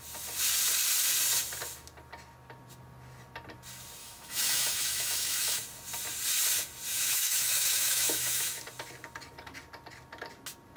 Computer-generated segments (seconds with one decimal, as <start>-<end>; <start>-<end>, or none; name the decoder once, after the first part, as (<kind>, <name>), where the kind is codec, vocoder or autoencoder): 4.0-5.6 (autoencoder, DAC-VAE); 6.9-8.6